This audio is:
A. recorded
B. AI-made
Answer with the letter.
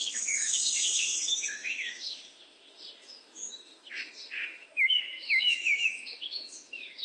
B